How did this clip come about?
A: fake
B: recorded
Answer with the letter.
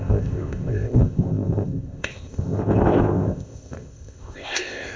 A